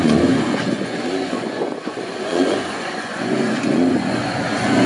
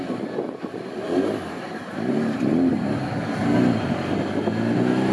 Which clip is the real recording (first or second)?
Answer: second